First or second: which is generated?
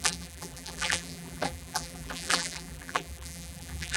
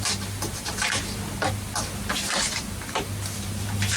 first